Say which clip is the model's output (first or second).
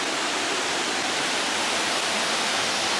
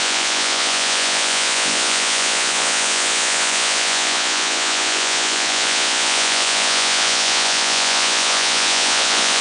second